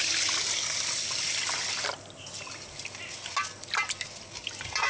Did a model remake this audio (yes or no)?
no